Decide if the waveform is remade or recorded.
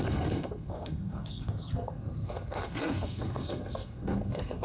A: remade